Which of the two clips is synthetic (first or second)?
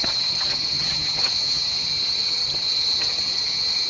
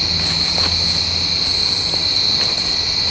first